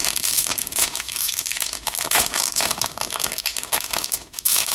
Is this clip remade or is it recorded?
remade